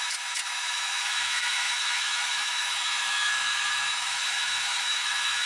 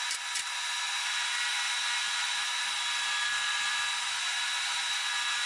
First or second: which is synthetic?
first